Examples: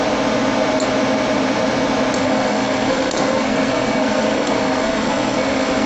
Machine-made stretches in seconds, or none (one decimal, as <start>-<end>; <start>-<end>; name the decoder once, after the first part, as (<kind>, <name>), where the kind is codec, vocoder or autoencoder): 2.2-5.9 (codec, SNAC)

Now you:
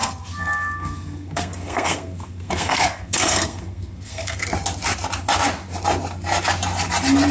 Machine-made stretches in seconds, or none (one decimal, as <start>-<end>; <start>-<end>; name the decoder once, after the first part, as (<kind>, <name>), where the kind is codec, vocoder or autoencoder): 0.0-4.4 (codec, SNAC)

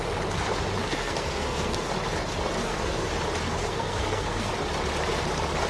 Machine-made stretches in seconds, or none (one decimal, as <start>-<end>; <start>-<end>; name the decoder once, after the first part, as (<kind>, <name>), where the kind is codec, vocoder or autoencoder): 0.8-1.9 (codec, SNAC); 2.6-3.1; 3.6-4.5

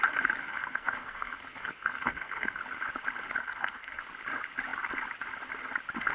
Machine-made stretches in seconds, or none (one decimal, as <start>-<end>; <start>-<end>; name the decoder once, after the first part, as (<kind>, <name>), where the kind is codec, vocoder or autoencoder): 0.4-2.6 (codec, SNAC); 3.4-4.0

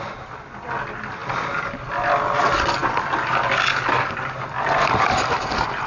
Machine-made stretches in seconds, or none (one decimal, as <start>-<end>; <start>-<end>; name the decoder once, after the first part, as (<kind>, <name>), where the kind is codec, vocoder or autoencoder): none

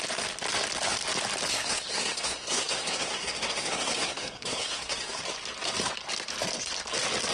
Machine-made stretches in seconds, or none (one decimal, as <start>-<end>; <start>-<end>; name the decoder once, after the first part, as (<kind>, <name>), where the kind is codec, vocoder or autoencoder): 1.5-5.2 (codec, SNAC)